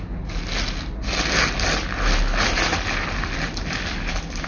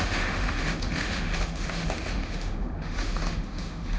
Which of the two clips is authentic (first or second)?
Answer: first